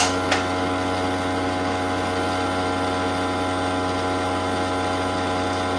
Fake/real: real